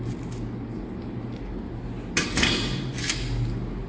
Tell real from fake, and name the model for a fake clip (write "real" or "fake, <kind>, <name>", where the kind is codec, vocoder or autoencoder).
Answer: real